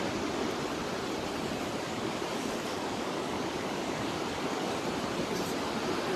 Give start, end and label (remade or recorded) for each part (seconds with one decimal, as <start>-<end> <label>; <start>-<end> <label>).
0.0-1.9 recorded; 1.9-4.8 remade; 4.8-6.2 recorded

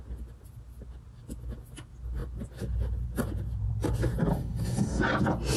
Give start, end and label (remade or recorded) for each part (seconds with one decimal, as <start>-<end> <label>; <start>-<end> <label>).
0.0-4.3 recorded; 4.3-5.0 remade; 5.0-5.6 recorded

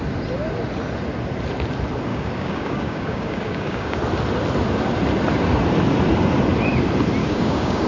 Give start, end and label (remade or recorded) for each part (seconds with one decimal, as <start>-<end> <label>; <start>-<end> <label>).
0.0-2.1 recorded; 2.1-4.0 remade; 4.0-7.2 recorded; 7.2-7.9 remade

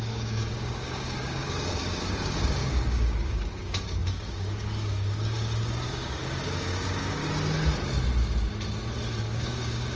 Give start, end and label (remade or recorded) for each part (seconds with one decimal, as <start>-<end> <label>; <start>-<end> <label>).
0.0-7.2 remade; 7.2-9.2 recorded; 9.2-10.0 remade

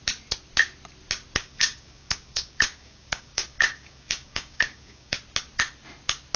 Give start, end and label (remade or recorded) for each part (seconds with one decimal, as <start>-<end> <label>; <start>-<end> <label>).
0.0-1.4 recorded; 1.4-5.2 remade; 5.2-6.4 recorded

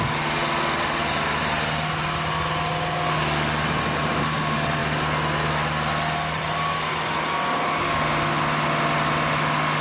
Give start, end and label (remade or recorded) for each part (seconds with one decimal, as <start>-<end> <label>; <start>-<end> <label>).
0.0-9.8 recorded

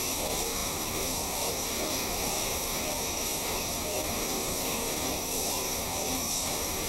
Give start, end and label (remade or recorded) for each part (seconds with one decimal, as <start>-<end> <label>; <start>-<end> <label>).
0.0-6.9 remade